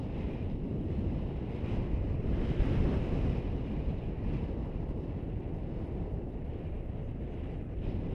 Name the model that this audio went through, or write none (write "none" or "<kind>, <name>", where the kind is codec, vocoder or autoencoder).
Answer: none